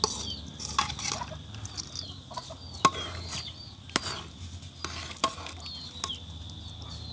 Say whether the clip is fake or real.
real